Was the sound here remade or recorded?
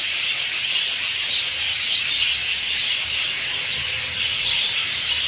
recorded